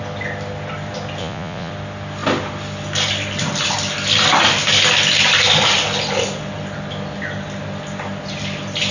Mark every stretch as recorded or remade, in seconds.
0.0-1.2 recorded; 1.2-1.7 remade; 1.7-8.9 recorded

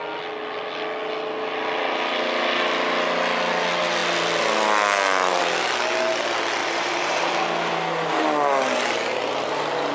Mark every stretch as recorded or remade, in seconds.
0.0-6.6 recorded; 6.6-7.3 remade; 7.3-9.9 recorded

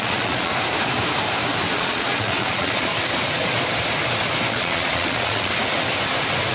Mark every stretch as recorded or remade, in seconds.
0.0-0.5 remade; 0.5-1.7 recorded; 1.7-2.9 remade; 2.9-4.5 recorded; 4.5-5.5 remade; 5.5-6.5 recorded

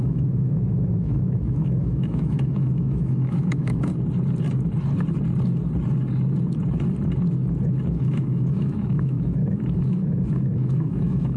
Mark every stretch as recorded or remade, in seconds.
0.0-3.9 remade; 3.9-7.9 recorded; 7.9-11.4 remade

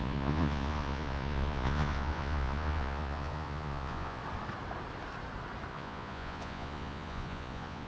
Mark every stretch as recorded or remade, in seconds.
0.0-4.2 remade; 4.2-5.7 recorded; 5.7-7.9 remade